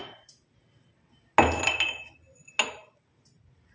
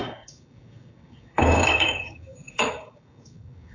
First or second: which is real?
first